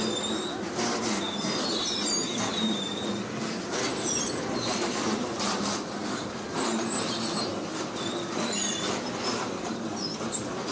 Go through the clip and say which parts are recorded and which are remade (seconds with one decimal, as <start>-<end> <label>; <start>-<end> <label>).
0.0-2.5 recorded; 2.5-7.5 remade; 7.5-10.7 recorded